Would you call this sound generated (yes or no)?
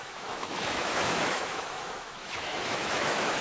yes